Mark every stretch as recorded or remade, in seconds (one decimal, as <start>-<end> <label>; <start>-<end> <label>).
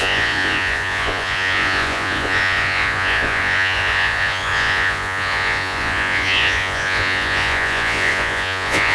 0.0-8.9 remade